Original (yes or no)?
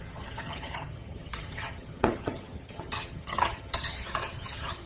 no